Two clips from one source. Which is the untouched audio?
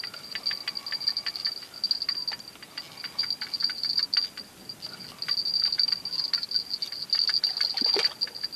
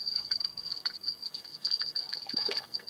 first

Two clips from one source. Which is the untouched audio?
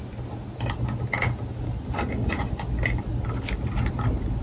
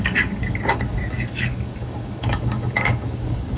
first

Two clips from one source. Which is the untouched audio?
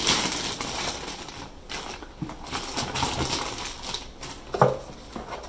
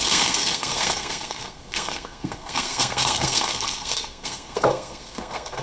first